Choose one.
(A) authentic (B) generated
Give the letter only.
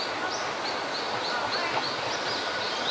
A